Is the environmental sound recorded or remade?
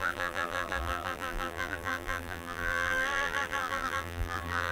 remade